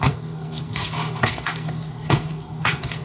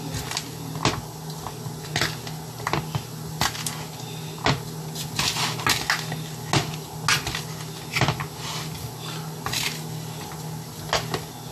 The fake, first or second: first